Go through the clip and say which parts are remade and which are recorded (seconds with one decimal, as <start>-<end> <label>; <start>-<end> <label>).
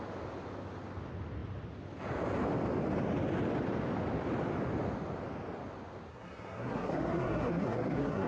0.0-6.1 recorded; 6.1-8.3 remade